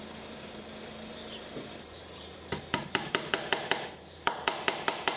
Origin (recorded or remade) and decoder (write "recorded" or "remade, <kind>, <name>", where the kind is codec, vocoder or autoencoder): remade, vocoder, BigVGAN v2